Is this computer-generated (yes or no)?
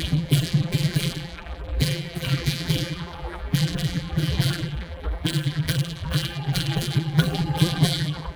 yes